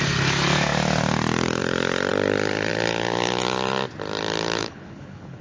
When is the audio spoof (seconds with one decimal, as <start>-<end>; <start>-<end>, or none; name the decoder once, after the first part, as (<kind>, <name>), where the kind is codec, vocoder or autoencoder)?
4.6-5.4 (codec, HILCodec)